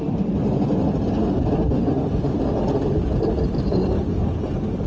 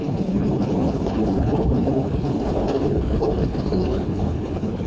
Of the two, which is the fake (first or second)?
second